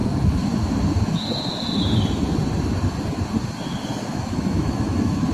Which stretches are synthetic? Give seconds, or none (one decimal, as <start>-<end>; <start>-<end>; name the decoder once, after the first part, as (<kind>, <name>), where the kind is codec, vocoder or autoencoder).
4.1-5.3 (autoencoder, DAC-VAE)